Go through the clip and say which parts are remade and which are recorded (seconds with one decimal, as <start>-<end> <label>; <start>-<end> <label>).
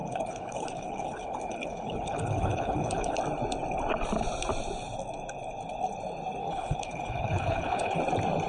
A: 0.0-3.2 remade; 3.2-6.4 recorded; 6.4-8.0 remade; 8.0-8.5 recorded